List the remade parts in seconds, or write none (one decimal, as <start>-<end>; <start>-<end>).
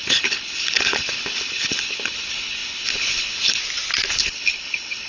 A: 0.0-3.6; 4.1-5.1